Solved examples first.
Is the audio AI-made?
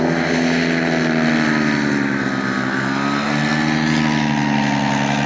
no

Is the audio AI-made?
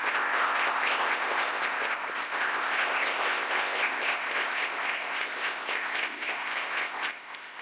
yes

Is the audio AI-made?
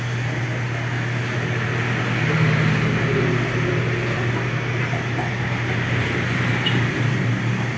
no